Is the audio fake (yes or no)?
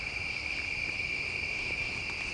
no